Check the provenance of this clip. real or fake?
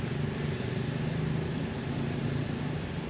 real